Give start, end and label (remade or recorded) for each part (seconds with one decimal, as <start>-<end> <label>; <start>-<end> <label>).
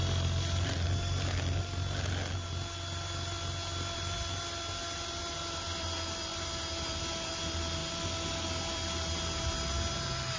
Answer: 0.0-10.4 recorded